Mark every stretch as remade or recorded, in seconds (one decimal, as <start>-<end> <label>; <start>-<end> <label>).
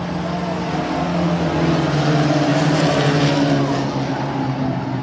0.0-2.5 recorded; 2.5-3.2 remade; 3.2-5.0 recorded